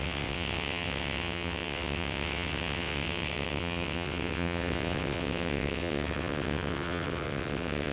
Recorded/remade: remade